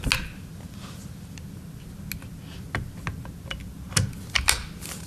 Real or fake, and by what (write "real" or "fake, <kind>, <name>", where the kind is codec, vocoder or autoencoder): real